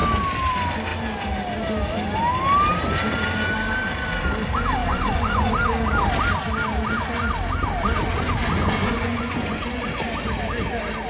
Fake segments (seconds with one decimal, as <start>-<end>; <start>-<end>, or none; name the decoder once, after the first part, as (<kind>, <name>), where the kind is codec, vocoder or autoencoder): 4.8-5.5 (vocoder, Vocos); 8.6-9.7